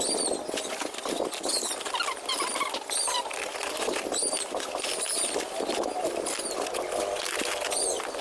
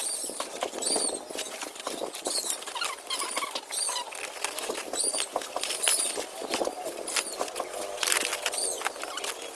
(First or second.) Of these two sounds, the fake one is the second